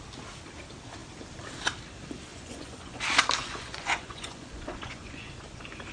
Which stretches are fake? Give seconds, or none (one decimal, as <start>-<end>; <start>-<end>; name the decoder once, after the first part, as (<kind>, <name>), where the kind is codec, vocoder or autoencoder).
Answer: 2.3-3.0 (vocoder, Vocos); 3.4-5.3